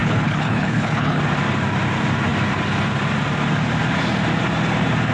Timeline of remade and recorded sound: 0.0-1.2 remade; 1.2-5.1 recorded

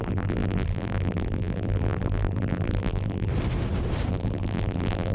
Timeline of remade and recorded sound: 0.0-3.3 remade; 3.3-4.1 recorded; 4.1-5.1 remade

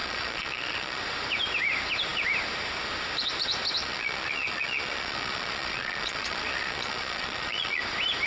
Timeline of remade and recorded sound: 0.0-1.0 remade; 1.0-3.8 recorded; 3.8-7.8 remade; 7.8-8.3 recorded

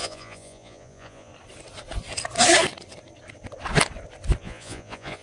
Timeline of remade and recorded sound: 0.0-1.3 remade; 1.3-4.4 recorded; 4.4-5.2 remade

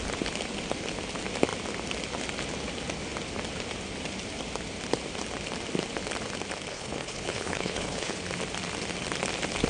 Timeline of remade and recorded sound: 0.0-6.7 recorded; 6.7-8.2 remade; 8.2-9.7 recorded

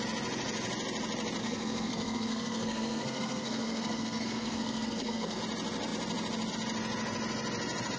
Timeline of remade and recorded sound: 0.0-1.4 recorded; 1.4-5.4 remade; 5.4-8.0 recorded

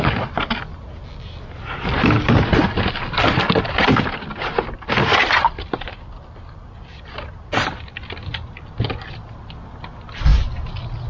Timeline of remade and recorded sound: 0.0-11.1 recorded